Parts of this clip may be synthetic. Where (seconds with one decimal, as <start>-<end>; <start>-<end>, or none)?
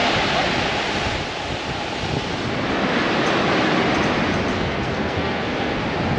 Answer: 4.5-5.8